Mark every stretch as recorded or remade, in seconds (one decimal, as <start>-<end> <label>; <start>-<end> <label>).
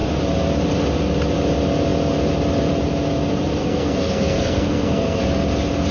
0.0-3.6 recorded; 3.6-5.2 remade; 5.2-5.9 recorded